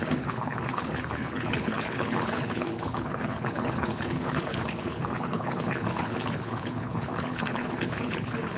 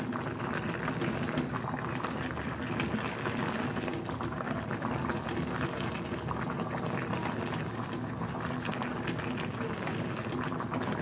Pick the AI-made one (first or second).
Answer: first